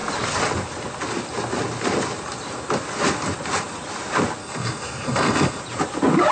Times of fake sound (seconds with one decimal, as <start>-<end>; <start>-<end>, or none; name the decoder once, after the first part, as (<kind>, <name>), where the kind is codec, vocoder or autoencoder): 4.4-5.6 (codec, SNAC)